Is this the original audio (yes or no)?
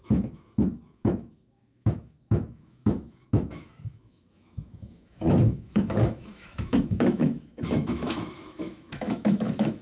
no